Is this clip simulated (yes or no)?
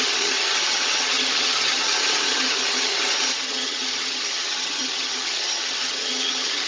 yes